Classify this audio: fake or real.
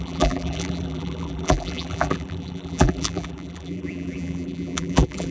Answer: fake